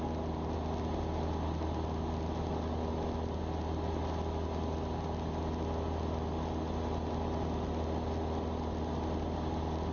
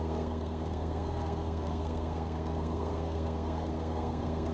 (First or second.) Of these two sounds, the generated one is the second